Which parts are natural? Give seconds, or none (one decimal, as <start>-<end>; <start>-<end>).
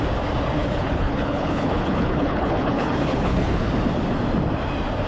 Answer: 0.0-0.6; 3.7-5.1